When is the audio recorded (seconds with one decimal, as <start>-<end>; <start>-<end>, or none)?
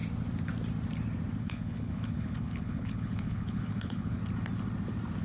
0.0-1.4; 4.2-5.2